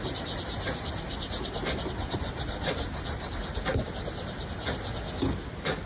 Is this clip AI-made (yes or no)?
no